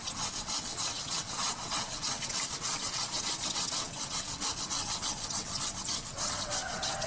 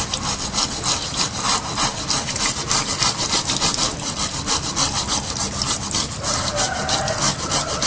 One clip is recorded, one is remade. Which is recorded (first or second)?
second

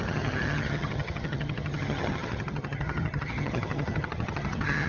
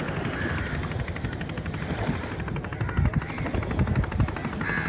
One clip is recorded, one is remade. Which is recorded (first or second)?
second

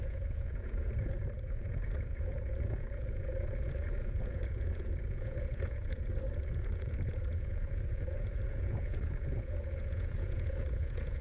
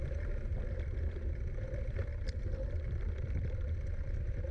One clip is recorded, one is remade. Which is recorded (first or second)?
second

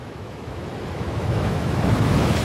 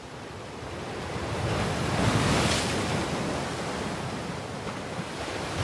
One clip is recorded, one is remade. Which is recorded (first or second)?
second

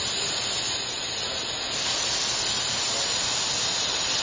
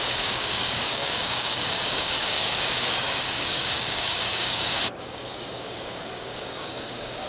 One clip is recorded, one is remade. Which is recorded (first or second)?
first